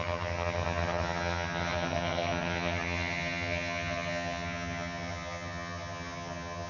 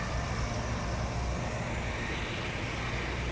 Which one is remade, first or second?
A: first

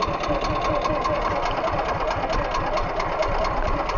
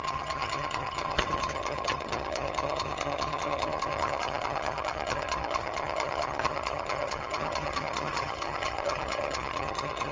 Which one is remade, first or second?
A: second